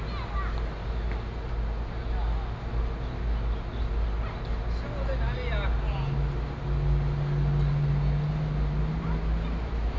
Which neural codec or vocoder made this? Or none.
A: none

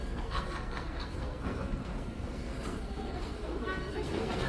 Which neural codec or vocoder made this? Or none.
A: codec, SNAC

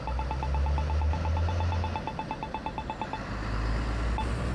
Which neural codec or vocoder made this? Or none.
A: none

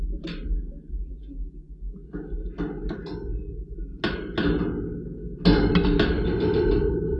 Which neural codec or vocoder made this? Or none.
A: none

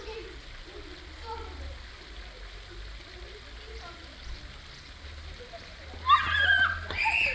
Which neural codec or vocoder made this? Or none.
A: none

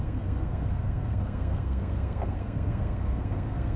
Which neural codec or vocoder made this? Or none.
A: codec, SNAC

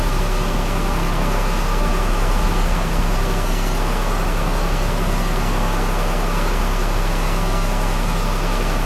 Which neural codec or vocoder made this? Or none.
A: codec, SNAC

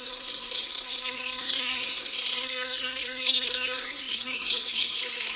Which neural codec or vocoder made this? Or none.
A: codec, SNAC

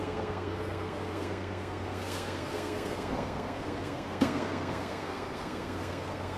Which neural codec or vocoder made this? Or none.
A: codec, SNAC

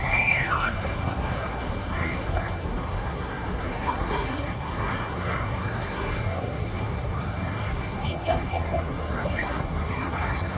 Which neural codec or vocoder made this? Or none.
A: codec, SNAC